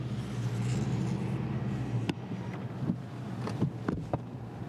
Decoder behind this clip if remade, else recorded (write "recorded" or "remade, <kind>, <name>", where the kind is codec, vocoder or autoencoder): recorded